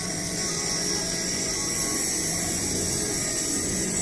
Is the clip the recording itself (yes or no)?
no